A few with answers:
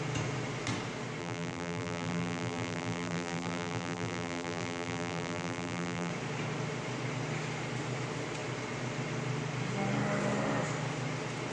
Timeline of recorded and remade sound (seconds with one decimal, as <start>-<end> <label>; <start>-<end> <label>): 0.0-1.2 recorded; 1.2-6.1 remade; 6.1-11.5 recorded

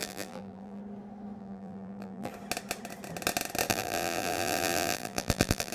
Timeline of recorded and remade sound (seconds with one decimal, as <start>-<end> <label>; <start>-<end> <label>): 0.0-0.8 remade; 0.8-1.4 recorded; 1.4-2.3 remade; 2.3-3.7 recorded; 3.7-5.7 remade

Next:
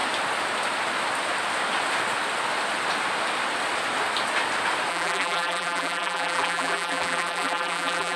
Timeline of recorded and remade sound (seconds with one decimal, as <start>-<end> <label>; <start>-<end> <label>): 0.0-4.9 recorded; 4.9-8.2 remade